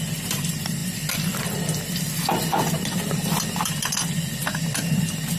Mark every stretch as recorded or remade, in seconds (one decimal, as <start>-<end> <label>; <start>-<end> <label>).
0.0-5.4 remade